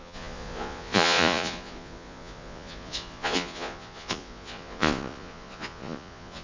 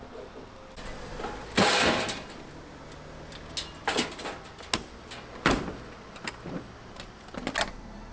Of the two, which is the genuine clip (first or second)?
second